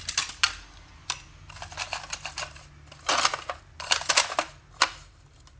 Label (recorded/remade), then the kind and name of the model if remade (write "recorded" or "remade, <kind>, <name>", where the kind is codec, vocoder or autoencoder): recorded